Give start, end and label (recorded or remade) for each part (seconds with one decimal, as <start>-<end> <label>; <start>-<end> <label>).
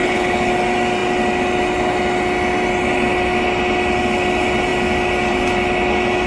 0.0-0.5 remade; 0.5-6.3 recorded